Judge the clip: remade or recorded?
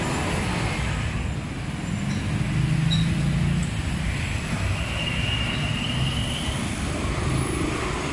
recorded